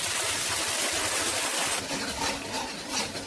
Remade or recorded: recorded